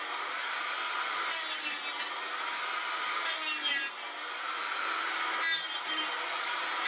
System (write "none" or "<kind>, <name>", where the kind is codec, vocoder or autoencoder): none